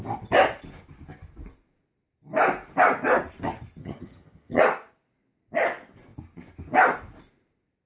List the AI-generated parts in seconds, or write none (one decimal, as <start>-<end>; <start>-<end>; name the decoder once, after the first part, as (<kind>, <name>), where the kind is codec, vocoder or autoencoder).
3.8-4.6 (vocoder, HiFi-GAN)